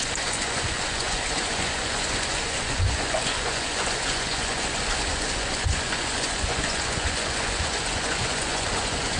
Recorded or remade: remade